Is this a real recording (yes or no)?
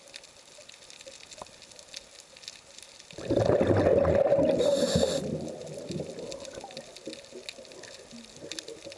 yes